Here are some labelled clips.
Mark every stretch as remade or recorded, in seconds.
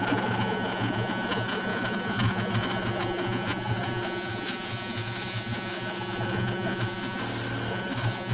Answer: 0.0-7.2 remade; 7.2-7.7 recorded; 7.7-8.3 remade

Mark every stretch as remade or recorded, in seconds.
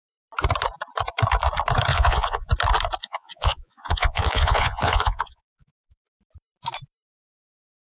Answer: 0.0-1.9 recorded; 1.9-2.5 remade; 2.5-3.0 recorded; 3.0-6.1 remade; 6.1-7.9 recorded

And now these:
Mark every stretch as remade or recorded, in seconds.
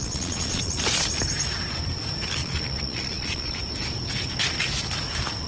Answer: 0.0-0.8 remade; 0.8-2.4 recorded; 2.4-3.6 remade; 3.6-5.5 recorded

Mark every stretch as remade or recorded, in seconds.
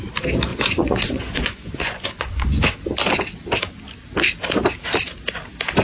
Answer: 0.0-0.5 recorded; 0.5-2.6 remade; 2.6-5.8 recorded